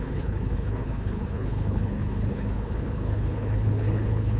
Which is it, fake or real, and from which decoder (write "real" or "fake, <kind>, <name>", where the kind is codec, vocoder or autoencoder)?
fake, codec, HILCodec